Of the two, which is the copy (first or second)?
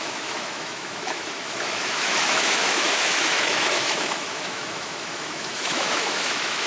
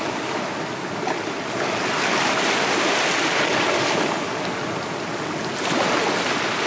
first